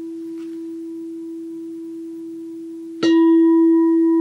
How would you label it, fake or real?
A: real